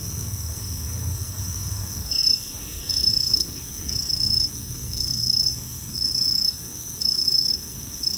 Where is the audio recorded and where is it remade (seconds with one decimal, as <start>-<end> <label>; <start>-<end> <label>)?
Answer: 0.0-8.2 remade